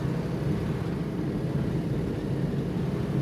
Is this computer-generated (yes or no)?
no